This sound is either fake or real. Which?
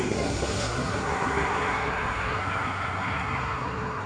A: fake